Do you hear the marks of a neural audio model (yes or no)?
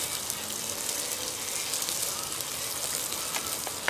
no